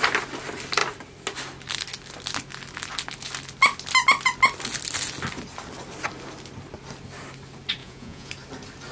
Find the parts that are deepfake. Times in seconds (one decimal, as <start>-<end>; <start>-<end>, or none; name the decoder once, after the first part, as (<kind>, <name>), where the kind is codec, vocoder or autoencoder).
7.8-8.3 (vocoder, Vocos)